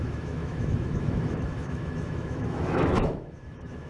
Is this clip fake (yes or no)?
yes